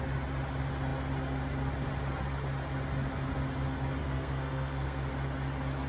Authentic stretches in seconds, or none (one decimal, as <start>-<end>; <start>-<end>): 0.0-4.0; 5.1-5.9